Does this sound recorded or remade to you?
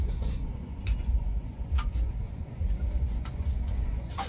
remade